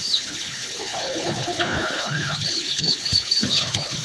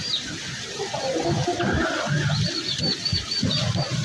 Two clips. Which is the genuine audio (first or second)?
second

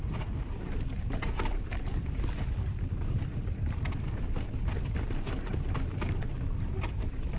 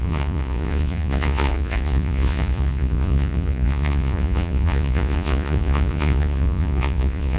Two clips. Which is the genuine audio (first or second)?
first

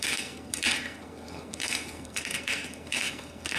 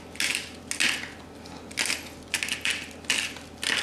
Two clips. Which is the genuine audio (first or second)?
second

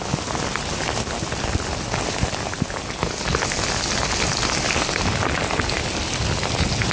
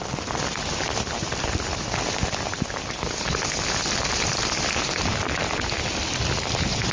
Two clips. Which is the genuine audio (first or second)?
first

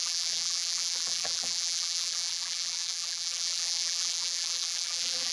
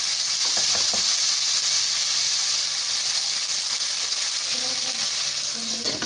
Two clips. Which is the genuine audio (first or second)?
second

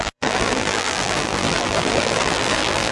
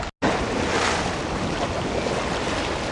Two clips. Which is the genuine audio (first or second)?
second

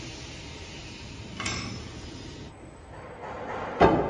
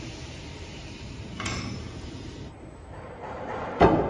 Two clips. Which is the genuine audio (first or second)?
first